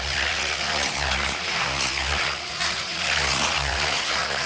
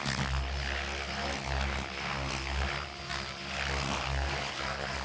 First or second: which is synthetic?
first